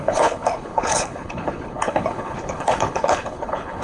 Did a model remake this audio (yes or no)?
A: yes